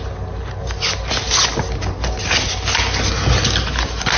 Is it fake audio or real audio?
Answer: real